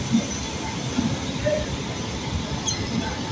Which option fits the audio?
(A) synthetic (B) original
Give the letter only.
B